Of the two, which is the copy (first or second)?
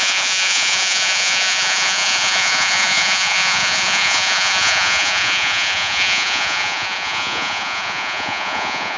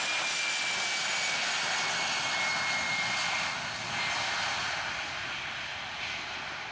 first